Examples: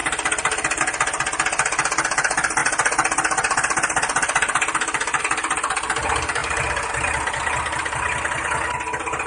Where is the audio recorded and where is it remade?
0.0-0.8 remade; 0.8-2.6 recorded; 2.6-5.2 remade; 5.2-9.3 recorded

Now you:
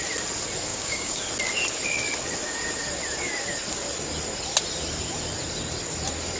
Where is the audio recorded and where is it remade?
0.0-0.7 recorded; 0.7-1.2 remade; 1.2-6.4 recorded